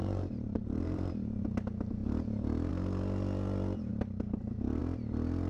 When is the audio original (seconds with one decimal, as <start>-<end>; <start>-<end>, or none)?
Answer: 1.4-5.5